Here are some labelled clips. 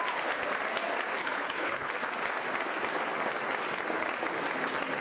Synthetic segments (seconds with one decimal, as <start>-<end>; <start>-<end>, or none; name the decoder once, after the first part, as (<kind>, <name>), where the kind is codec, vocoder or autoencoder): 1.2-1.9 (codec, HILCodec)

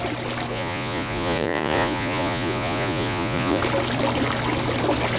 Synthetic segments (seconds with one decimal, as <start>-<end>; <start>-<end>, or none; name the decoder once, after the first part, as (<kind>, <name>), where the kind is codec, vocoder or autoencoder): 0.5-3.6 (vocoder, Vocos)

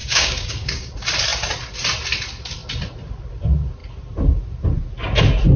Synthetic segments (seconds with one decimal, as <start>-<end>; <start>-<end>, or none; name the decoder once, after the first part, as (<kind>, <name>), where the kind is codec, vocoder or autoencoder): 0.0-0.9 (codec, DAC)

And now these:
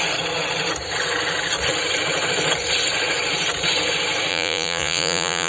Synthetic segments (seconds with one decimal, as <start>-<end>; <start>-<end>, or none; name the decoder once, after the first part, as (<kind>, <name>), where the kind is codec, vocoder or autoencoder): 4.3-5.5 (vocoder, Vocos)

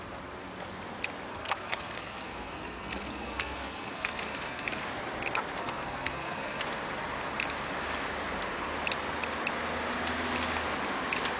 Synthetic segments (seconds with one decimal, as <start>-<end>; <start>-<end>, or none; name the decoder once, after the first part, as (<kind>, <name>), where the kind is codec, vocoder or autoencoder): 1.3-4.8 (codec, SNAC); 5.6-6.6

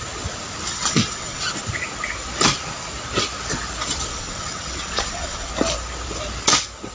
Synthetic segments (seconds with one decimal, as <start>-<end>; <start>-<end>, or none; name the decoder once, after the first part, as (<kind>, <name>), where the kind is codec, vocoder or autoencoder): 0.7-1.4 (vocoder, WaveNeXt); 4.1-5.5

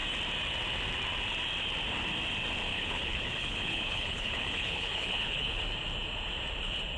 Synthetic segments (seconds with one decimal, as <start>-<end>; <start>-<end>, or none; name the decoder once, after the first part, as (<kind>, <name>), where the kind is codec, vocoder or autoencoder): 2.7-5.6 (codec, HILCodec)

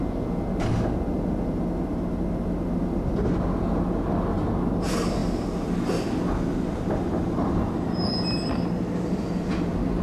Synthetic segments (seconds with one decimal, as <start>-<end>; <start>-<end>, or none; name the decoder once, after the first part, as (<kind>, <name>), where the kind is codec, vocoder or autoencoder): none